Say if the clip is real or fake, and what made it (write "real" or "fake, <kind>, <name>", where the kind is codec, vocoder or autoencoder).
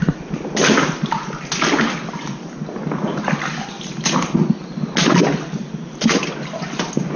real